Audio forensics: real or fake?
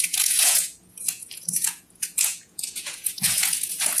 fake